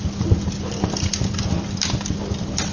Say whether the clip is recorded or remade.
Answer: recorded